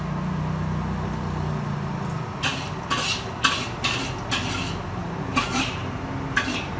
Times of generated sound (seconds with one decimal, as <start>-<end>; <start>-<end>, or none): none